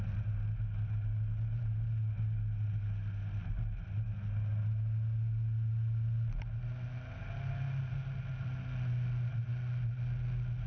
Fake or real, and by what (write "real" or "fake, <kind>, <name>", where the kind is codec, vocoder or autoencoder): real